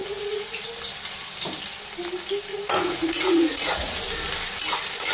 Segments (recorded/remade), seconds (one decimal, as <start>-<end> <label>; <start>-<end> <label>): 0.0-0.7 remade; 0.7-2.5 recorded; 2.5-3.9 remade; 3.9-5.1 recorded

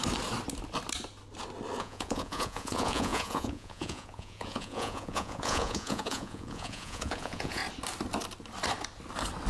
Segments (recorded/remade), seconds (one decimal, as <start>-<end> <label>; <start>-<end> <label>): 0.0-1.8 recorded; 1.8-7.6 remade; 7.6-9.5 recorded

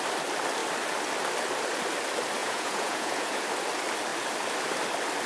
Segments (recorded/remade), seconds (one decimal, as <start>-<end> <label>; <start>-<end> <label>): 0.0-2.4 recorded; 2.4-3.4 remade; 3.4-5.3 recorded

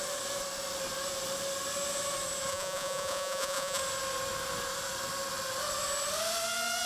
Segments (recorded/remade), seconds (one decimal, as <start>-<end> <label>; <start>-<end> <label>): 0.0-2.5 recorded; 2.5-3.8 remade; 3.8-6.9 recorded

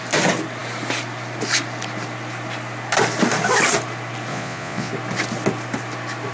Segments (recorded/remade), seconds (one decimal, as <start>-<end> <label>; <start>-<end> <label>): 0.0-4.3 recorded; 4.3-4.9 remade; 4.9-6.3 recorded

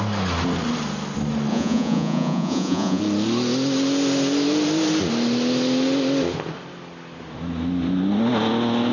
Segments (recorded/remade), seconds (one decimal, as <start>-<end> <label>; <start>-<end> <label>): 0.0-1.5 recorded; 1.5-3.0 remade; 3.0-8.9 recorded